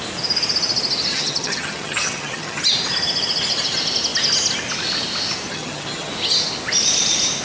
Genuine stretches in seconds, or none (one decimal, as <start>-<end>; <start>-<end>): 0.0-1.1; 2.6-5.5; 6.1-7.4